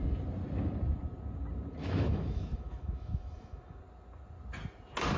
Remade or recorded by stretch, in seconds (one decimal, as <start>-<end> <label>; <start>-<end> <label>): 0.0-1.8 recorded; 1.8-3.8 remade; 3.8-5.2 recorded